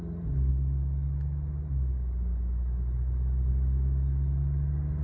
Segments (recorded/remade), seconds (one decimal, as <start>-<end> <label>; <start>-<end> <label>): 0.0-5.0 recorded